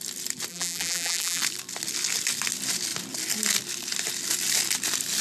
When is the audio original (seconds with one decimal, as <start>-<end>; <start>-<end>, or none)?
0.0-0.5; 1.4-5.2